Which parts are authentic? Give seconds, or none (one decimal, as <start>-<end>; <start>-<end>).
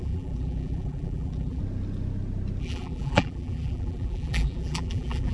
1.6-2.6